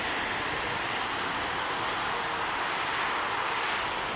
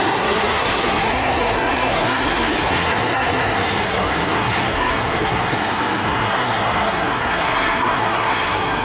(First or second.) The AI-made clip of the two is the second